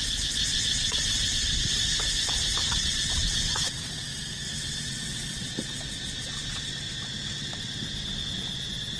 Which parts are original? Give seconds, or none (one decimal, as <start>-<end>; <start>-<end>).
0.0-0.5; 2.0-2.6; 5.5-9.0